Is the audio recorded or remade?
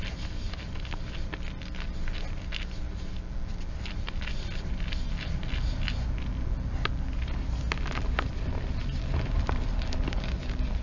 recorded